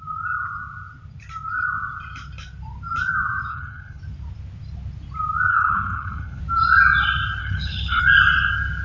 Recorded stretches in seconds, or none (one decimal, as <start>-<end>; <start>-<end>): 0.0-3.5; 4.0-5.5; 6.4-7.4; 8.0-8.8